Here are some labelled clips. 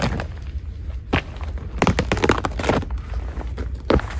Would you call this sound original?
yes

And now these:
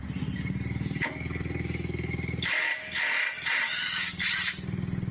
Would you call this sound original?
yes